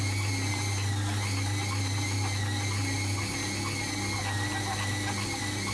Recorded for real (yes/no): yes